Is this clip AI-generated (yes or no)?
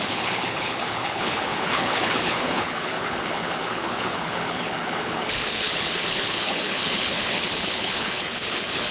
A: yes